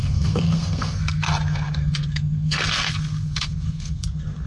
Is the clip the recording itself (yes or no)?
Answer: no